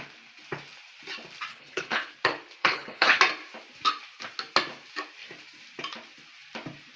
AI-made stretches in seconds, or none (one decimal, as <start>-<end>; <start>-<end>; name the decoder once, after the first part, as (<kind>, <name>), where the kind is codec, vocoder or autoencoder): 1.5-2.1 (codec, HILCodec); 2.6-3.2